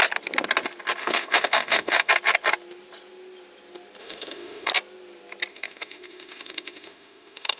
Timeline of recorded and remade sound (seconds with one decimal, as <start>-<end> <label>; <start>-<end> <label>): 0.0-1.0 recorded; 1.0-2.1 remade; 2.1-4.0 recorded; 4.0-4.7 remade; 4.7-5.5 recorded; 5.5-7.6 remade